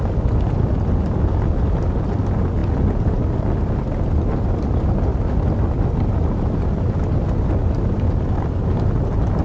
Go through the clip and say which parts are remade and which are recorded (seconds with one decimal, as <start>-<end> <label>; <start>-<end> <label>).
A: 0.0-9.4 recorded